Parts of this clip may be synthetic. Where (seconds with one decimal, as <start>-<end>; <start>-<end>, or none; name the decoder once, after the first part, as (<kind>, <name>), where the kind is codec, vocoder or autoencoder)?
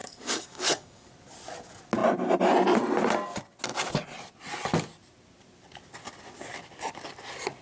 0.0-1.1 (codec, DAC)